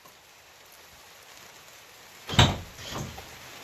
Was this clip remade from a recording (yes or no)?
no